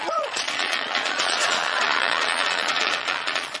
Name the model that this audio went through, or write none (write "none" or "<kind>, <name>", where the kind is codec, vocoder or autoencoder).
vocoder, Vocos